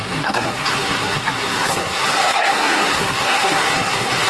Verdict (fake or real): fake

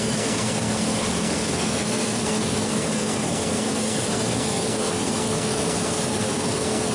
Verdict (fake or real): fake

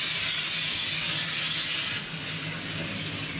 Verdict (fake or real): real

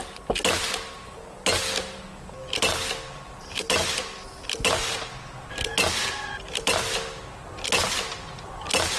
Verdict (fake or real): real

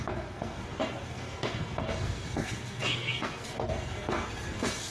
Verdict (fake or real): fake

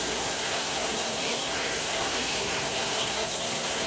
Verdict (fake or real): fake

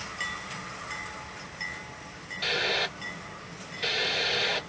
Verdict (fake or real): real